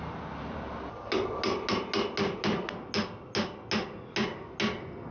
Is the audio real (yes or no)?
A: yes